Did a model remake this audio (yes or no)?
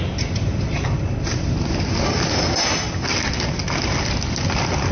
no